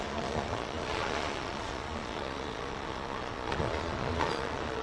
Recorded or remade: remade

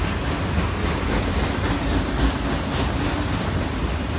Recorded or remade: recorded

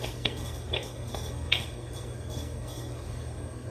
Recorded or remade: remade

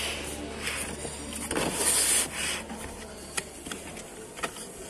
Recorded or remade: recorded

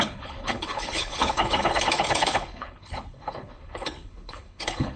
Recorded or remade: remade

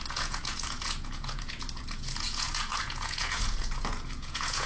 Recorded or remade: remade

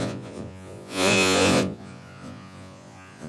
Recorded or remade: remade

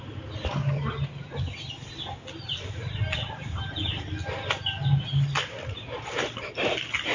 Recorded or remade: recorded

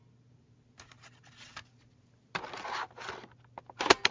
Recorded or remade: recorded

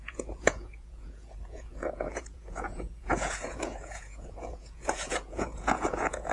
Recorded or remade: remade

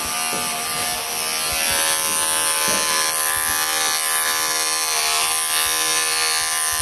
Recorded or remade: recorded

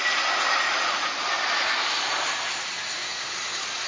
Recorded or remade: recorded